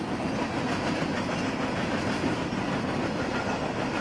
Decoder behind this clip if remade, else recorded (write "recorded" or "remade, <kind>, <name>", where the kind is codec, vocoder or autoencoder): recorded